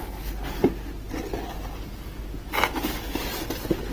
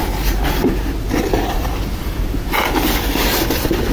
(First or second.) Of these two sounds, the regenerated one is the second